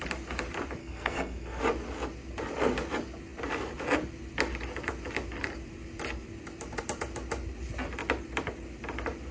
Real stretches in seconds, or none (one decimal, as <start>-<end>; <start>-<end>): 0.0-0.8; 1.6-9.3